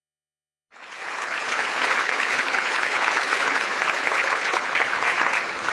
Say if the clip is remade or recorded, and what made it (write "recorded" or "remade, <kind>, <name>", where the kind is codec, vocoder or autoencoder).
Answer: remade, codec, HILCodec